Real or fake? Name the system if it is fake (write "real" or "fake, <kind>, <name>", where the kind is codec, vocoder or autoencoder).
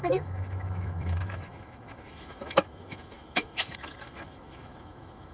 fake, autoencoder, DAC-VAE